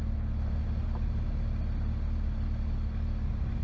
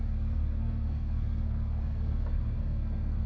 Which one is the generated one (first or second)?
second